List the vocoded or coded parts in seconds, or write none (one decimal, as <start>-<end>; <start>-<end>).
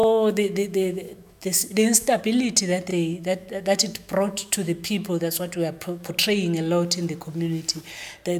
0.0-2.2; 2.9-6.1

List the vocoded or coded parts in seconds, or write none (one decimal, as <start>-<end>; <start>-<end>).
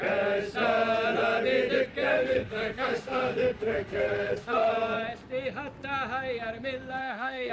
2.1-4.7; 7.0-7.5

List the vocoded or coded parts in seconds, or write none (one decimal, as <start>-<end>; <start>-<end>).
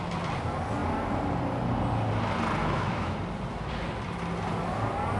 2.6-3.2